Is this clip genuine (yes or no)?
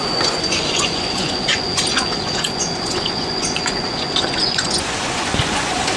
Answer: no